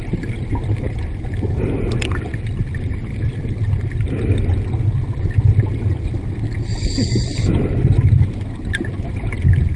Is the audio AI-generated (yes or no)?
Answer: no